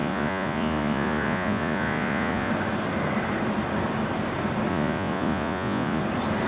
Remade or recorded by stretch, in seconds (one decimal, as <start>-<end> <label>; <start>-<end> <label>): 0.0-2.5 remade; 2.5-4.7 recorded; 4.7-6.0 remade; 6.0-6.5 recorded